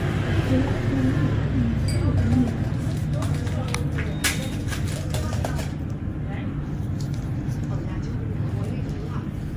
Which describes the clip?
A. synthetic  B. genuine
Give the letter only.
B